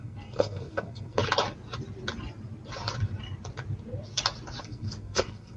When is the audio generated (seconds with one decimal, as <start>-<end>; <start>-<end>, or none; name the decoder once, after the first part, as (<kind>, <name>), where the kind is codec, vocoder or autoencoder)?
0.0-1.2 (codec, SNAC); 4.6-5.6